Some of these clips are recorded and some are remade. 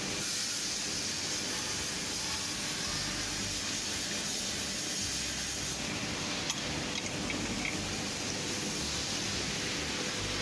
recorded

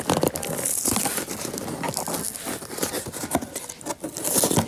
recorded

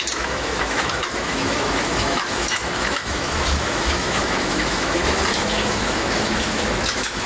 remade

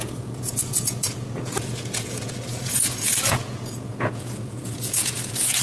remade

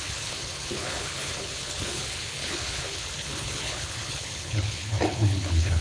remade